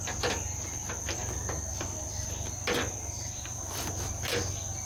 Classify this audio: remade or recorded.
recorded